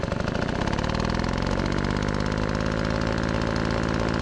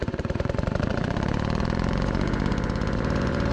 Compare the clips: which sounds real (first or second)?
first